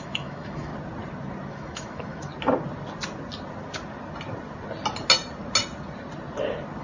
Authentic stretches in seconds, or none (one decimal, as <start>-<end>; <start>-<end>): 0.7-1.5; 2.3-6.8